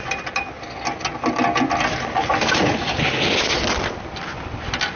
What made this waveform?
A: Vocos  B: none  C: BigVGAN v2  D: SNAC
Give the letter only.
B